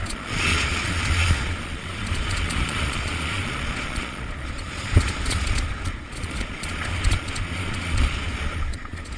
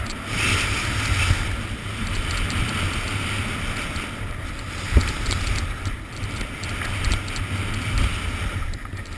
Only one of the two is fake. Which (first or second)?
first